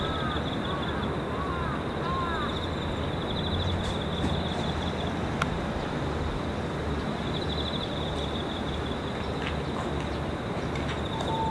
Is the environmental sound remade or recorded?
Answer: recorded